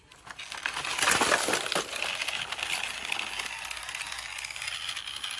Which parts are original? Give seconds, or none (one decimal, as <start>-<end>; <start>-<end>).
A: 0.0-5.4